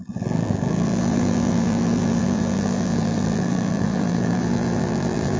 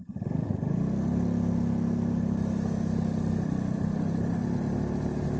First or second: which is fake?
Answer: first